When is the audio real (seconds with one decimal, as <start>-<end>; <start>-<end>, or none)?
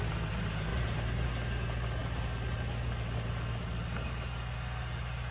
0.0-0.7; 1.3-5.3